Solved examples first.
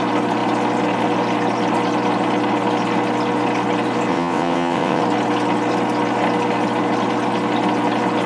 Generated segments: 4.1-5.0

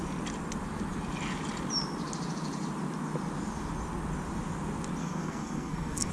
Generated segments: 5.0-6.1

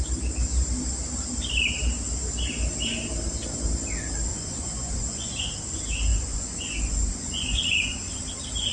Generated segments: 4.3-5.5; 6.1-8.2